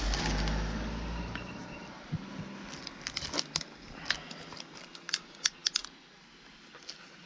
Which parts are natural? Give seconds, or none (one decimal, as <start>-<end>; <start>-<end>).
0.0-1.6; 2.3-7.3